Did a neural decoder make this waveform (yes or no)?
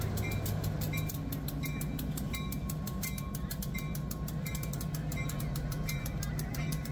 no